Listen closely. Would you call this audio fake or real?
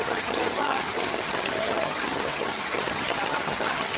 fake